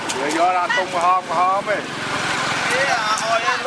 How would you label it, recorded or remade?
recorded